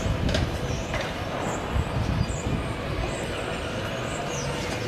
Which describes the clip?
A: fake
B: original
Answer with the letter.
B